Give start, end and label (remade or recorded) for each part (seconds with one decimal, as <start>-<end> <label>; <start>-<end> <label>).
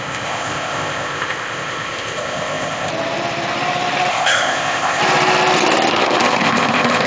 0.0-2.9 remade; 2.9-4.1 recorded; 4.1-5.0 remade; 5.0-5.9 recorded; 5.9-7.1 remade